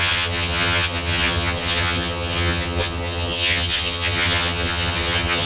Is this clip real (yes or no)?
no